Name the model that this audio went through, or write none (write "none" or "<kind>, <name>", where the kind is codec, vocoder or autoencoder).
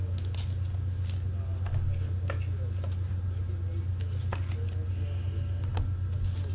none